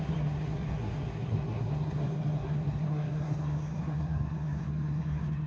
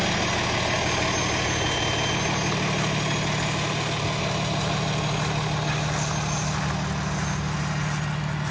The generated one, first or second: first